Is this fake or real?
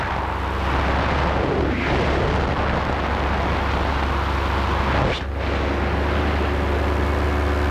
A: real